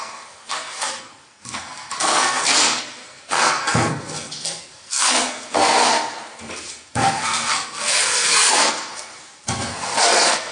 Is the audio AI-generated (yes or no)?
yes